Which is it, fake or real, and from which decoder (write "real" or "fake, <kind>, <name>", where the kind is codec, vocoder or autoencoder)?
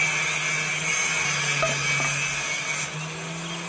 real